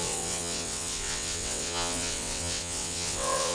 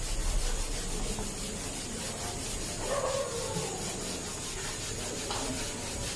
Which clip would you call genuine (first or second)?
second